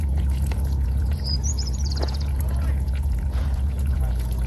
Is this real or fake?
fake